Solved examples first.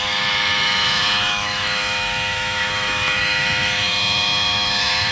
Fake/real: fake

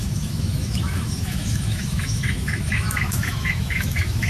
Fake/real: fake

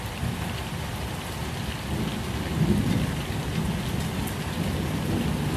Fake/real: real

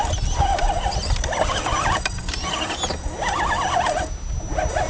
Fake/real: real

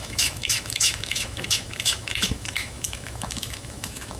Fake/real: fake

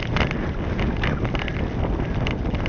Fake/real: real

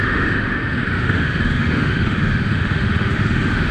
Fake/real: fake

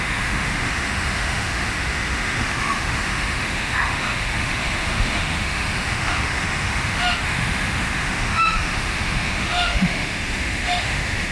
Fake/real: fake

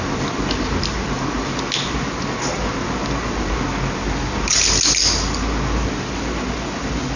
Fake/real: real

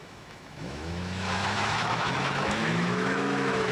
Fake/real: fake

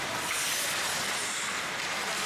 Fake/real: real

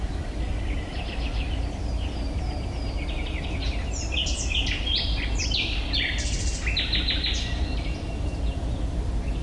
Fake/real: real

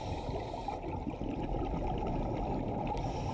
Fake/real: real